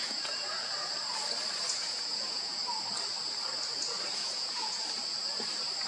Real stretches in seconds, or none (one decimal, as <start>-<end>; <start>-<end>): 0.9-1.8; 2.6-4.2; 4.8-5.9